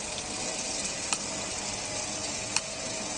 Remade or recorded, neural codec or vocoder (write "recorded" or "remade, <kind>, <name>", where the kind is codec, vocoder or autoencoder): recorded